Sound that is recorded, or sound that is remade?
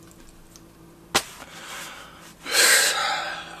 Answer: recorded